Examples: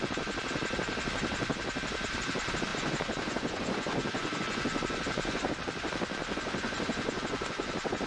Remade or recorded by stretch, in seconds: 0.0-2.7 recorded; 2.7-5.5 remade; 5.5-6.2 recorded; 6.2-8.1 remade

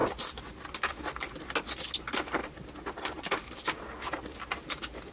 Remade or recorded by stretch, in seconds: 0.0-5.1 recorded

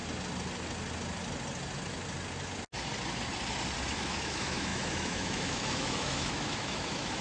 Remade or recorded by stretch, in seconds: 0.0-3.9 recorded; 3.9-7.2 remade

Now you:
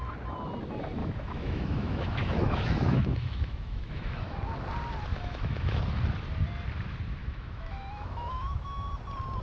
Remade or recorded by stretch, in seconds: 0.0-1.0 recorded; 1.0-4.4 remade; 4.4-5.1 recorded; 5.1-5.8 remade; 5.8-7.2 recorded; 7.2-8.9 remade; 8.9-9.4 recorded

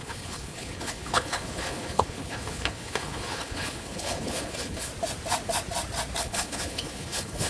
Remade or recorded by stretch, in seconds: 0.0-4.9 remade; 4.9-6.2 recorded; 6.2-7.5 remade

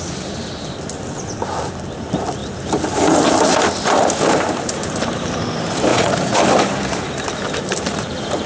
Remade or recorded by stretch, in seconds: 0.0-5.9 recorded; 5.9-6.4 remade; 6.4-8.5 recorded

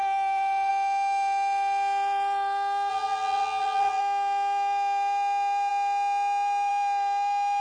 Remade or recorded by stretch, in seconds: 0.0-2.9 recorded; 2.9-4.0 remade; 4.0-7.6 recorded